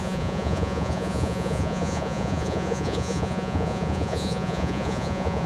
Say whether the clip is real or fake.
fake